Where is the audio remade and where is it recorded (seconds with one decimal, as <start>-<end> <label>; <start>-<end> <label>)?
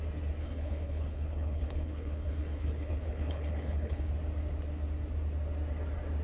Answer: 0.0-0.4 recorded; 0.4-4.1 remade; 4.1-6.2 recorded